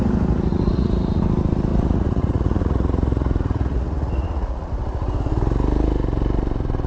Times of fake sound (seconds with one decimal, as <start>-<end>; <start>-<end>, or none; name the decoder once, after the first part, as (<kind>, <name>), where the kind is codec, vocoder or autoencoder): 0.5-1.2 (vocoder, Vocos); 1.7-4.7